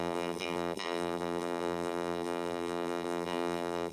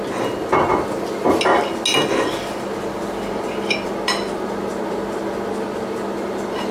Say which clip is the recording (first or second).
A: second